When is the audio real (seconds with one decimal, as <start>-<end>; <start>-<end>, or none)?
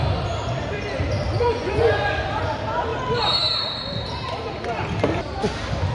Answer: 0.0-1.4; 2.1-5.9